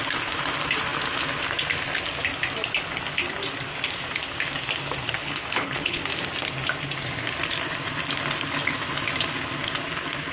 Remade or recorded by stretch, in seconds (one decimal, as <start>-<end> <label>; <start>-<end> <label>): 0.0-5.2 recorded; 5.2-6.0 remade; 6.0-10.3 recorded